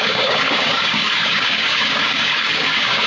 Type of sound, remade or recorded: remade